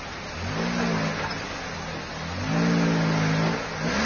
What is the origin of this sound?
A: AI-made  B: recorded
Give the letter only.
B